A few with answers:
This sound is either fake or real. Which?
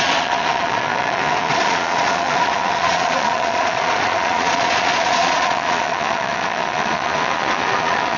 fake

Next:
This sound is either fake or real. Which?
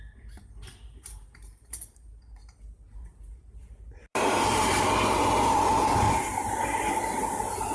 fake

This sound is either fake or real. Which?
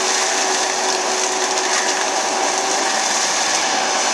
real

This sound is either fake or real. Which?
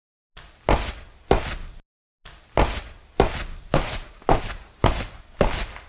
real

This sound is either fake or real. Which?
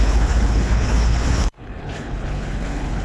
fake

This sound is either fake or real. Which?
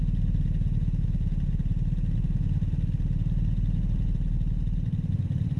real